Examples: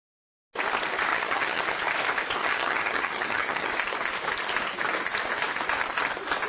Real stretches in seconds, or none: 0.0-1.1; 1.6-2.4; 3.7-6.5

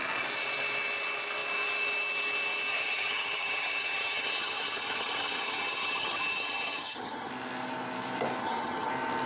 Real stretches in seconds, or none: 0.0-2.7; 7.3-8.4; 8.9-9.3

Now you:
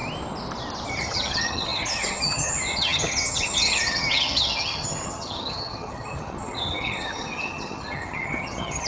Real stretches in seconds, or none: 0.0-0.9